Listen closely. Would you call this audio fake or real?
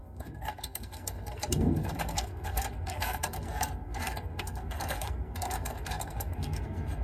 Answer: fake